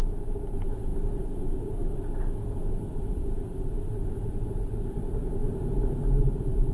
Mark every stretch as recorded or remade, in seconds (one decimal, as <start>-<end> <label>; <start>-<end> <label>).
0.0-5.4 remade; 5.4-6.2 recorded; 6.2-6.7 remade